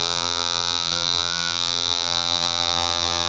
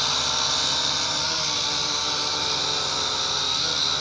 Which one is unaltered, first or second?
second